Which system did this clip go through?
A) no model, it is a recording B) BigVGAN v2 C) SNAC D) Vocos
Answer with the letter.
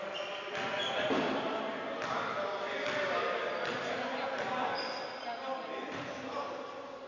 A